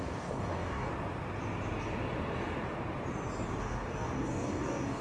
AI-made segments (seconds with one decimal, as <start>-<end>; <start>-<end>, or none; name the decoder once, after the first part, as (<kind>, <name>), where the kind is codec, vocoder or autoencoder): 0.0-0.9 (codec, DAC); 3.6-5.0